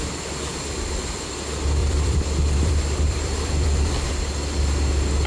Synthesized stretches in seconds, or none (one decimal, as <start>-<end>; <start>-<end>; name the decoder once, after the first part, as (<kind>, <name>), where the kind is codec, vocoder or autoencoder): 0.5-1.2 (vocoder, BigVGAN v2); 1.8-4.1